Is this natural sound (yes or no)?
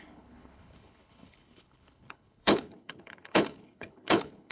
no